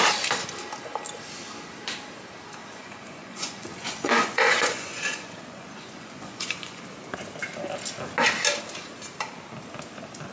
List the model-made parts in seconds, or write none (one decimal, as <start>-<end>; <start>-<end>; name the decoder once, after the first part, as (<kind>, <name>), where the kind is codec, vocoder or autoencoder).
2.6-6.8 (vocoder, Vocos)